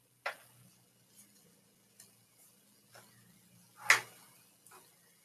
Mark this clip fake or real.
real